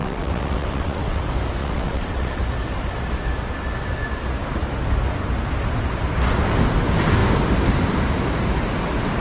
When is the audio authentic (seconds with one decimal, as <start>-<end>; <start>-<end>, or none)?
1.2-1.6; 2.4-9.2